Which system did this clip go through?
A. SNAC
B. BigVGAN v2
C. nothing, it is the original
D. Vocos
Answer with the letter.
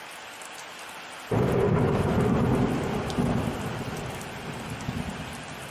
C